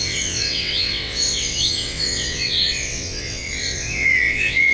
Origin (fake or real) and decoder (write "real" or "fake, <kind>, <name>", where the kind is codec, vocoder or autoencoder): fake, vocoder, WaveNeXt